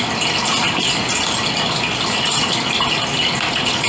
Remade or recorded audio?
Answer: recorded